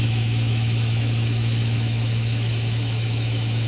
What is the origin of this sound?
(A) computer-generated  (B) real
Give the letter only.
A